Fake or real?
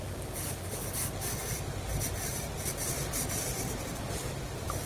real